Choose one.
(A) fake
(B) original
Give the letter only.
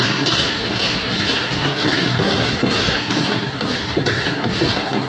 A